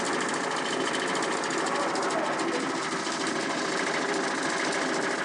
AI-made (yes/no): no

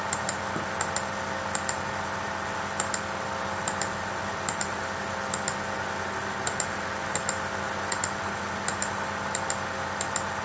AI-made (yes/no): no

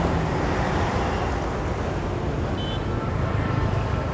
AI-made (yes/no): no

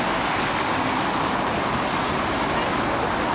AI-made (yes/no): no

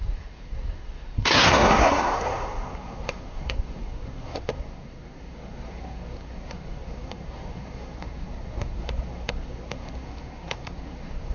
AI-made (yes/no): yes